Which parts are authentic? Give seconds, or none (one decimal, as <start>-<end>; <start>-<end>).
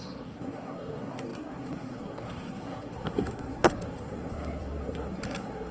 none